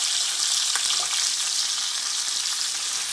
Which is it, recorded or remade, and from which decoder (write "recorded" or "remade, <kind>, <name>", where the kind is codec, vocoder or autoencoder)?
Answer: recorded